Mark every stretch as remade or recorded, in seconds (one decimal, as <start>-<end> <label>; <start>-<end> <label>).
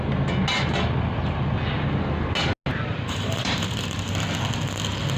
0.0-2.7 recorded; 2.7-4.1 remade; 4.1-5.2 recorded